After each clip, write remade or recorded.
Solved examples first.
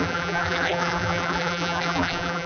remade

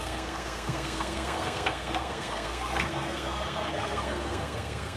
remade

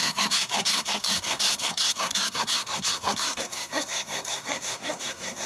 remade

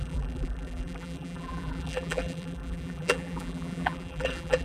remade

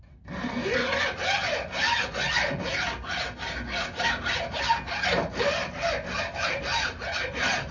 recorded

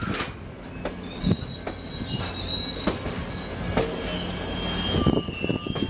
recorded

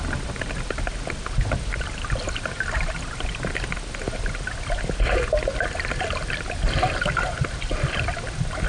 recorded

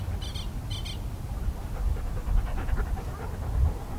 recorded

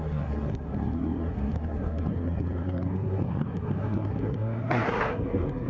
remade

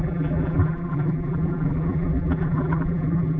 remade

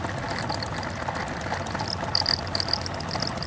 recorded